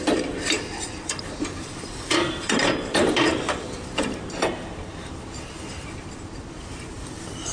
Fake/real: fake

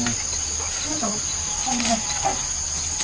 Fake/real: real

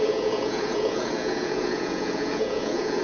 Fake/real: fake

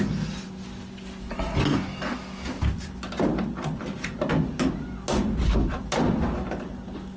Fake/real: real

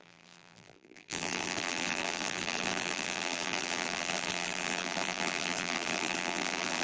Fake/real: fake